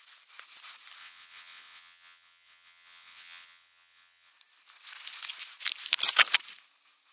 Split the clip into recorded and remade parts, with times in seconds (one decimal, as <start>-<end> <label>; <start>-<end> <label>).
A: 0.0-1.0 recorded; 1.0-4.3 remade; 4.3-7.1 recorded